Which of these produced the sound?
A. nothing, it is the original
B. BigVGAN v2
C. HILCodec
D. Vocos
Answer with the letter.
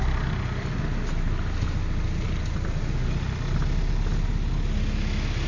A